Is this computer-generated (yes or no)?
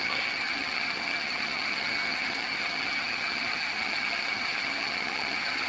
yes